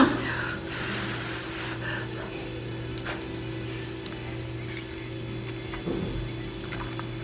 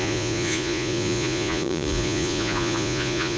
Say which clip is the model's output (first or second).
second